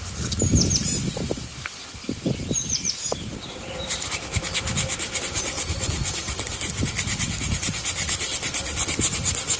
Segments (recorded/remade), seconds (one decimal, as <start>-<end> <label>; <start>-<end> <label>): 0.0-1.5 recorded; 1.5-4.1 remade; 4.1-9.6 recorded